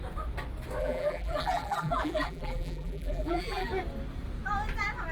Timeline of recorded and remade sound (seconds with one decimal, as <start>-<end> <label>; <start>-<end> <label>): 0.0-0.8 recorded; 0.8-3.7 remade; 3.7-5.1 recorded